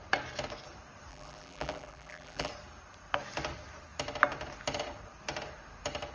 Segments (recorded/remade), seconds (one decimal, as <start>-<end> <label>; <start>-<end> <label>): 0.0-1.1 recorded; 1.1-2.5 remade; 2.5-6.1 recorded